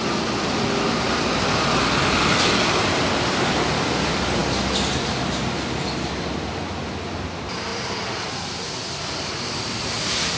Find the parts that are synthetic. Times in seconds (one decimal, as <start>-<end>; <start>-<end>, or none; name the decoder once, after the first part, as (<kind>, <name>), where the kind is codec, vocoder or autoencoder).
none